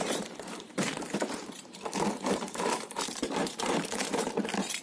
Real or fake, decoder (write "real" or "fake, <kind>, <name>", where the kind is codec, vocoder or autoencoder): fake, vocoder, BigVGAN v2